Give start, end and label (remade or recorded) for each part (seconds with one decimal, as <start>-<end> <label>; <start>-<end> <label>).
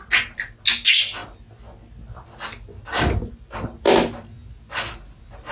0.0-5.5 recorded